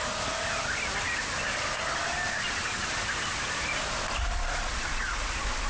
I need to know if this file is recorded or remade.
recorded